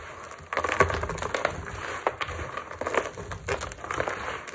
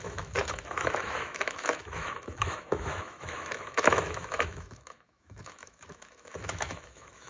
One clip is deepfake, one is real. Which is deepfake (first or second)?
second